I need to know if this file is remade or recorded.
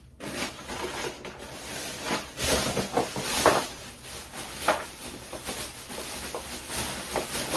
recorded